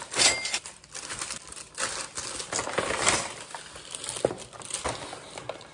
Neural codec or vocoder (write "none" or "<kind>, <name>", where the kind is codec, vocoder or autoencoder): none